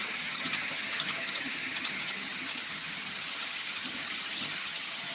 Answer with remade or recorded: remade